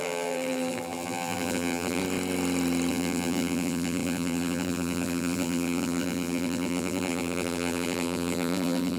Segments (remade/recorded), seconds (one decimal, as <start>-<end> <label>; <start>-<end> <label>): 0.0-2.0 remade; 2.0-2.9 recorded; 2.9-9.0 remade